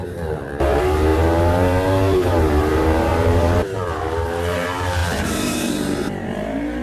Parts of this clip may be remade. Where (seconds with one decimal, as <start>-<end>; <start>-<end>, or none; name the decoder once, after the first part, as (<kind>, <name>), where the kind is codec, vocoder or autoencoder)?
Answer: 0.0-6.8 (vocoder, BigVGAN v2)